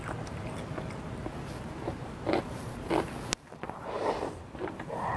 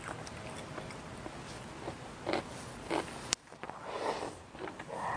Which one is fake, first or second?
first